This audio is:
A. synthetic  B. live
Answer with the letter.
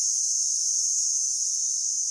B